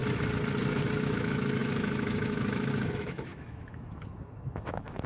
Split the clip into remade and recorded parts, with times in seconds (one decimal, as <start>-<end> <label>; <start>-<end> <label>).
0.0-1.0 recorded; 1.0-5.1 remade